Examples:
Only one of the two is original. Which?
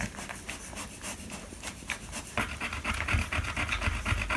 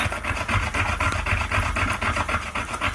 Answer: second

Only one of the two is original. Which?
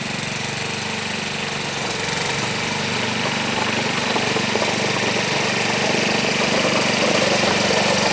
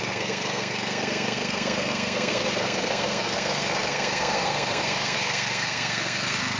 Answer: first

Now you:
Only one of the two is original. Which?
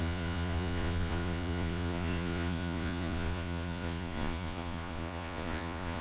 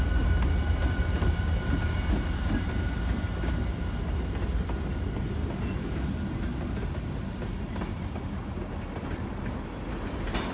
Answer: second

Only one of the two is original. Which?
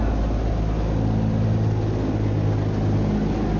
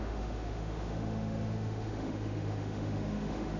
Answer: first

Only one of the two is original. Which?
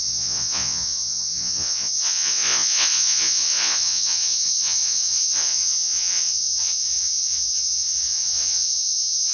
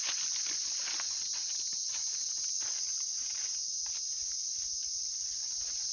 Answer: second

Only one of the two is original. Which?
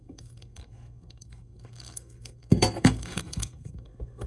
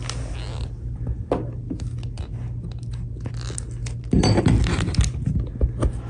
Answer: second